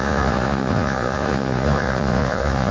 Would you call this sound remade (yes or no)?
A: yes